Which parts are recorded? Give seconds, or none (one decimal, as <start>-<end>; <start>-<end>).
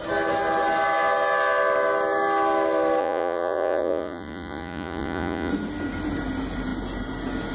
0.0-3.0; 5.5-7.5